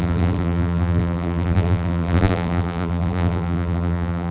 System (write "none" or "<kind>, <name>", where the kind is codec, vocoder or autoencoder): vocoder, BigVGAN v2